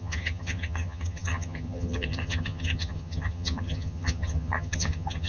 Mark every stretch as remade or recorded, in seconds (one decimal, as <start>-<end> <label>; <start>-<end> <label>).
0.0-5.3 remade